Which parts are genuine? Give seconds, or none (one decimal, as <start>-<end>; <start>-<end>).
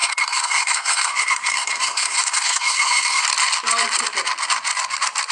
3.2-5.3